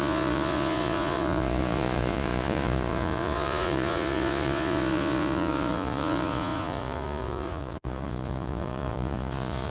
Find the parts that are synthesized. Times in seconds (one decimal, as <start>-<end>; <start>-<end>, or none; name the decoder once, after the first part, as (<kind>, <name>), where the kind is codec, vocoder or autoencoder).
0.0-9.7 (vocoder, Vocos)